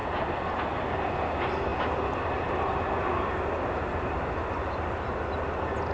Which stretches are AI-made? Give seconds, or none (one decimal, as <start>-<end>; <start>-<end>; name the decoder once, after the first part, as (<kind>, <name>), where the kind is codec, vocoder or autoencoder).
none

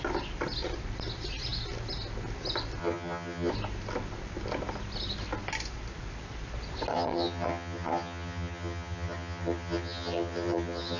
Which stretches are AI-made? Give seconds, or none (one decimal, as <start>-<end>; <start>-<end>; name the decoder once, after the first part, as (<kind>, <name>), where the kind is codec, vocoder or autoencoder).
2.8-3.5 (vocoder, HiFi-GAN); 6.9-11.0

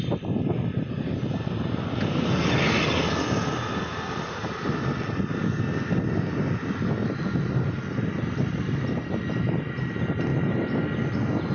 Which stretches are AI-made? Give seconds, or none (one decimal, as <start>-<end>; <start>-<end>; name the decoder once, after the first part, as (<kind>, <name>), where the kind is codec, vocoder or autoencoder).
none

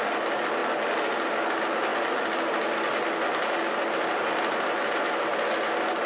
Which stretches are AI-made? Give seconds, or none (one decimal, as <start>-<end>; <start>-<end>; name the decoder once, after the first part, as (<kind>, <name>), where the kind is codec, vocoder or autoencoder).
none